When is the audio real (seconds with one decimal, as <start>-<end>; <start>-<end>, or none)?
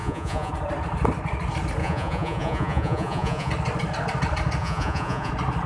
0.5-1.8; 3.5-4.6; 5.3-5.7